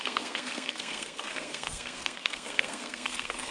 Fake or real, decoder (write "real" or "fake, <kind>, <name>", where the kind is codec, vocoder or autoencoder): fake, codec, SNAC